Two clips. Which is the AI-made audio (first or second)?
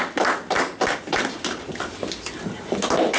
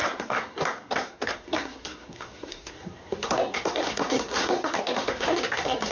second